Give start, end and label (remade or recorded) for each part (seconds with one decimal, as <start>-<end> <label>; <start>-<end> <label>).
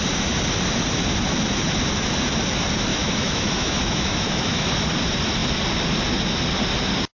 0.0-2.9 recorded; 2.9-4.7 remade; 4.7-7.2 recorded